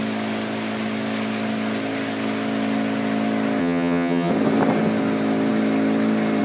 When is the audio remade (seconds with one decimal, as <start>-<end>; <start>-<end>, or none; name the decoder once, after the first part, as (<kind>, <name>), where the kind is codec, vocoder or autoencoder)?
3.6-4.3 (vocoder, HiFi-GAN)

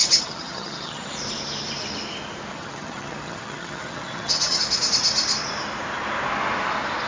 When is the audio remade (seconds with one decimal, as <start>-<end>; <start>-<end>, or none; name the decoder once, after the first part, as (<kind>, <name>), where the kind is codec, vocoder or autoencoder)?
0.0-1.1 (vocoder, HiFi-GAN); 2.5-4.6

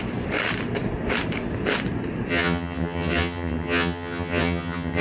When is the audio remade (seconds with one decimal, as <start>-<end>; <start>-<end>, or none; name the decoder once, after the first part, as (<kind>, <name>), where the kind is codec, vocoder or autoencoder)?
2.3-5.0 (vocoder, HiFi-GAN)

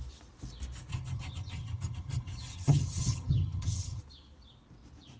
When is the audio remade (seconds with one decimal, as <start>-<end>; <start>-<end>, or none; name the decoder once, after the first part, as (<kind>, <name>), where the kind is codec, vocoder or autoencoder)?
0.9-4.0 (vocoder, HiFi-GAN)

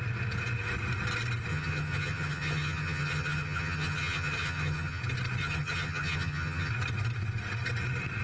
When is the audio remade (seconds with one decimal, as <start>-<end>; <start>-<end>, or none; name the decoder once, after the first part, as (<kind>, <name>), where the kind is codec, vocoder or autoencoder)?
1.5-5.0 (vocoder, HiFi-GAN); 5.4-6.7

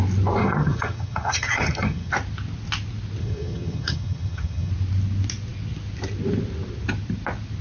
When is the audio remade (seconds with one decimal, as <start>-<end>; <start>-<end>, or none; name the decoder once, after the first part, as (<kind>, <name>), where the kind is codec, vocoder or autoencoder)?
0.4-2.1 (vocoder, HiFi-GAN); 3.2-4.7

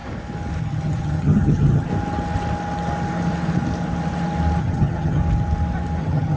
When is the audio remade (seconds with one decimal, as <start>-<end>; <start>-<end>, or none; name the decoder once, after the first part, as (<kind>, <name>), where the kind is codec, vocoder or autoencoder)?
0.6-1.9 (vocoder, HiFi-GAN); 4.6-5.2; 6.0-6.4